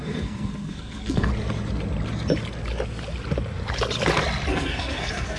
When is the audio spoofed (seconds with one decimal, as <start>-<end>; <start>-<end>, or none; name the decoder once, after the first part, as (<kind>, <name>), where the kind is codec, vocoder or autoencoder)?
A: 0.0-1.3 (codec, SNAC); 4.5-5.4